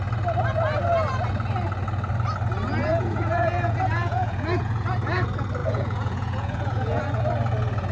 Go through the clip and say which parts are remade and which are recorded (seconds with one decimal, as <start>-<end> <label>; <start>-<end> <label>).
0.0-2.9 recorded; 2.9-4.9 remade; 4.9-5.6 recorded; 5.6-7.0 remade; 7.0-7.9 recorded